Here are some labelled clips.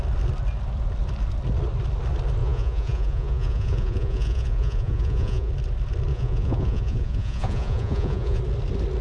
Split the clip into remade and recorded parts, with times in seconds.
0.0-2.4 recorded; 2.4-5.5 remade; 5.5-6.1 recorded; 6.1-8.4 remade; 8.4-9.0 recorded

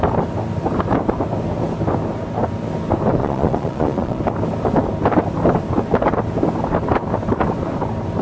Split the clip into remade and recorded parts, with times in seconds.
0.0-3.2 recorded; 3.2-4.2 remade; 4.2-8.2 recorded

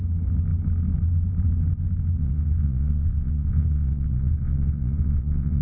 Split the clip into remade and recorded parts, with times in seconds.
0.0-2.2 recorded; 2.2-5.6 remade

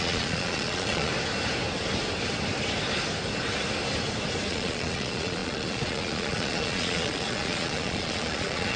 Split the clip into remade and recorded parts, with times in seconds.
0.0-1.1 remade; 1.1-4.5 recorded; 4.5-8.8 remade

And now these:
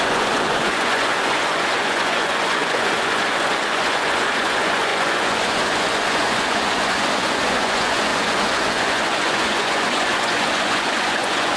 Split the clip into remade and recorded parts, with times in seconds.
0.0-11.6 remade

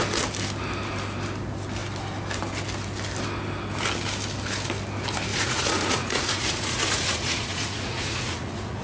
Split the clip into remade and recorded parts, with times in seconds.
0.0-5.3 recorded; 5.3-8.8 remade

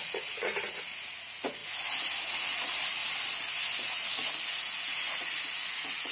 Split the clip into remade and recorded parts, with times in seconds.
0.0-1.6 remade; 1.6-2.2 recorded; 2.2-3.0 remade; 3.0-3.8 recorded; 3.8-6.1 remade

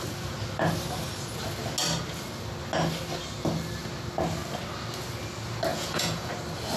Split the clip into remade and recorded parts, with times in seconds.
0.0-5.7 recorded; 5.7-6.3 remade; 6.3-6.8 recorded